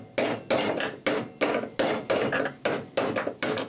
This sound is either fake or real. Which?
real